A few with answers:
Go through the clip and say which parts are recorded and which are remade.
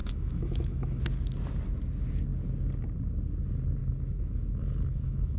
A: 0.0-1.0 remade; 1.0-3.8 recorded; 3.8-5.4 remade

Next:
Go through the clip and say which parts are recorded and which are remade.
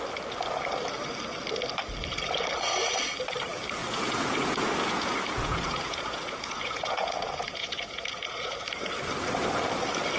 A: 0.0-3.8 recorded; 3.8-8.6 remade; 8.6-10.2 recorded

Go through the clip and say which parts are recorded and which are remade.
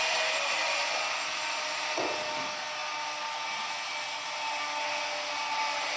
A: 0.0-6.0 recorded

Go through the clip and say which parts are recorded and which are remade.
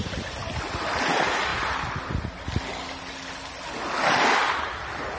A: 0.0-5.2 recorded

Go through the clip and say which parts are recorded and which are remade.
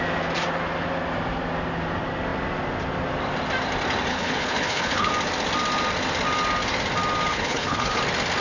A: 0.0-4.1 recorded; 4.1-5.1 remade; 5.1-7.3 recorded; 7.3-8.0 remade; 8.0-8.4 recorded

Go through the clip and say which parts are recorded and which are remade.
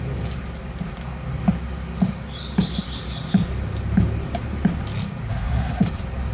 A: 0.0-5.3 recorded; 5.3-5.8 remade; 5.8-6.3 recorded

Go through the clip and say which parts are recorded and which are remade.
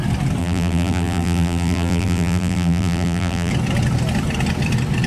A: 0.0-0.4 recorded; 0.4-3.5 remade; 3.5-5.1 recorded